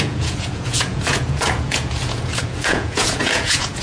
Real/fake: fake